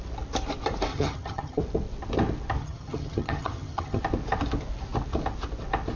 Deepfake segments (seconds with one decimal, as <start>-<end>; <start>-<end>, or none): 0.9-1.6; 2.6-4.0